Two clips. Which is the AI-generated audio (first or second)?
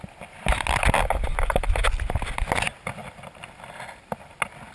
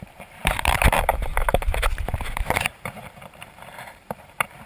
second